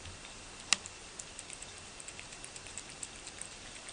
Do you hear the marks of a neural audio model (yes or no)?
no